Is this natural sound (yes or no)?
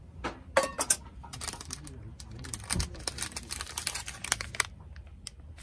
yes